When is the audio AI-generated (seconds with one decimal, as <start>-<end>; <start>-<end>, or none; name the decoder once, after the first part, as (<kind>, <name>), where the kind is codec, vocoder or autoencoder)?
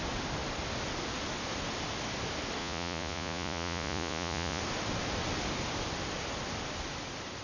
2.6-4.6 (vocoder, Vocos)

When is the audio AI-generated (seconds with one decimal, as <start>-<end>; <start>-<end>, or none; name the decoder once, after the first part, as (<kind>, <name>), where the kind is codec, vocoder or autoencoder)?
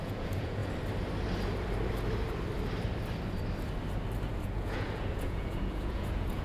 0.0-0.6 (vocoder, Vocos); 4.4-6.4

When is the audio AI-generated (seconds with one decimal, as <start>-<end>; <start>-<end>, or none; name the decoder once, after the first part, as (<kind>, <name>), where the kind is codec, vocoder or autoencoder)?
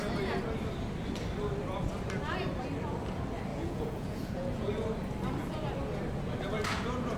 3.5-4.7 (vocoder, Vocos)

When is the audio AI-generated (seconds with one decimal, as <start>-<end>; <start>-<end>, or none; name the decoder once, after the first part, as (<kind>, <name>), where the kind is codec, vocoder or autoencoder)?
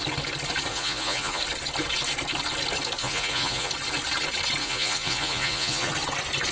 0.7-1.4 (vocoder, Vocos); 3.0-3.7; 4.6-5.9